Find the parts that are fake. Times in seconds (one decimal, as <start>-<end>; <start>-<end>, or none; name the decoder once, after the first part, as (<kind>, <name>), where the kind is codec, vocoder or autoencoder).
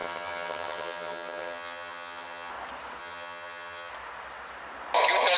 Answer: 0.0-2.5 (vocoder, HiFi-GAN); 3.0-3.9